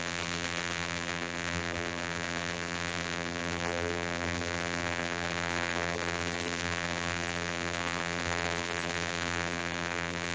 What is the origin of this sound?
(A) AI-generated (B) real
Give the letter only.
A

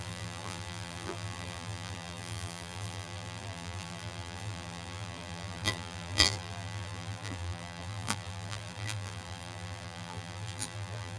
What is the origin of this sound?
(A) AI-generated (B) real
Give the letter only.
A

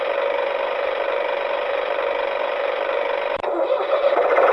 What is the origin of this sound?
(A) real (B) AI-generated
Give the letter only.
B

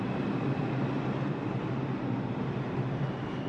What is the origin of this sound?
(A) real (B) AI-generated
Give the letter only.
A